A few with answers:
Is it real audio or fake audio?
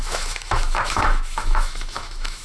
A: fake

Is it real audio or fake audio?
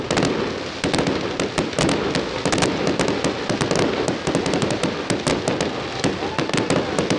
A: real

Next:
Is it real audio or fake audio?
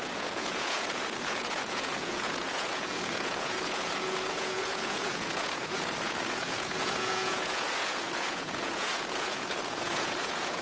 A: fake